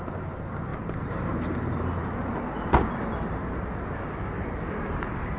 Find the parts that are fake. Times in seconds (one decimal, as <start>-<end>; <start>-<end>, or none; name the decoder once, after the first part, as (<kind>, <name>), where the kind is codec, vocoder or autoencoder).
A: none